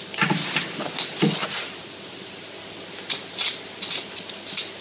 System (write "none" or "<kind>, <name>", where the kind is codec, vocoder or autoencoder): none